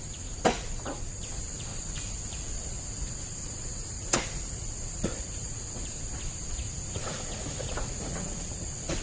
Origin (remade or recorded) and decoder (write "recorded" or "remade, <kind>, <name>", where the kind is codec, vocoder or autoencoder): remade, vocoder, Vocos